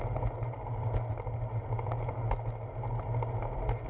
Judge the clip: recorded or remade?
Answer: recorded